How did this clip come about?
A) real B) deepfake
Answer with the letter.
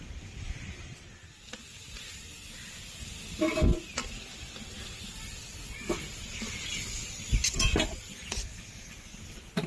A